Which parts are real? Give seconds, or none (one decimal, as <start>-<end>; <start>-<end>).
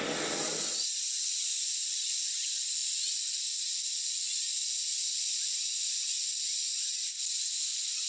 0.0-8.1